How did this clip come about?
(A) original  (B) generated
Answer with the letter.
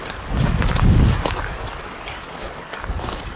B